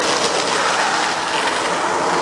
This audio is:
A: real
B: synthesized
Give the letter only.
A